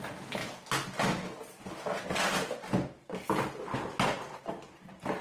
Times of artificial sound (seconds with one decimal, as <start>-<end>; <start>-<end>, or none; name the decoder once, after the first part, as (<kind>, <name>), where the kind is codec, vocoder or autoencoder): none